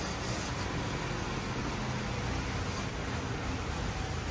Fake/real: real